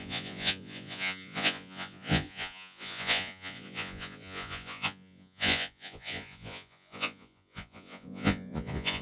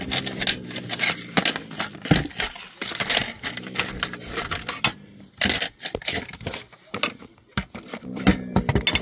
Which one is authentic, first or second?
second